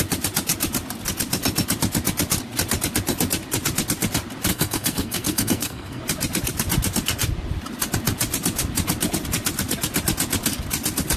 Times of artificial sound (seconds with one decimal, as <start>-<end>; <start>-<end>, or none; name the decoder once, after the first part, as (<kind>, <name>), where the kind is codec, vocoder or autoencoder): 4.5-6.0 (codec, SNAC)